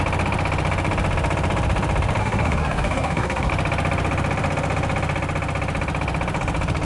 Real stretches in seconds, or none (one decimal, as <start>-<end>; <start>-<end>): 0.0-2.2; 3.5-6.8